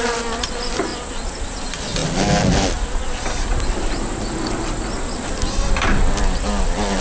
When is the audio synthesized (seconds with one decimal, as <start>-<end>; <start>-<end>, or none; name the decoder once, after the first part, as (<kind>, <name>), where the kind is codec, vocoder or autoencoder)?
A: none